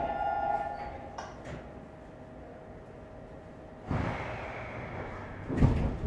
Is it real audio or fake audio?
real